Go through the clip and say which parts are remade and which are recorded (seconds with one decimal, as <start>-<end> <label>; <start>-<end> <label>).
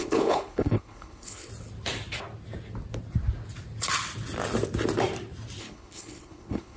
0.0-1.5 remade; 1.5-5.6 recorded; 5.6-6.8 remade